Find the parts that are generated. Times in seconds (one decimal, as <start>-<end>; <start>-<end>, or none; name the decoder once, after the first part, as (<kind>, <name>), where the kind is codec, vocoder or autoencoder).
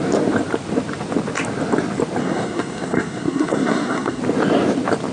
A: 2.2-4.2 (codec, SNAC)